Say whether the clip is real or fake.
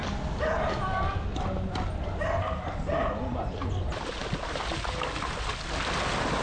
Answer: real